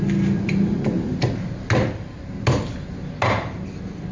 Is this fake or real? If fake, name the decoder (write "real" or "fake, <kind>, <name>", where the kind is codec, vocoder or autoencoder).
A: real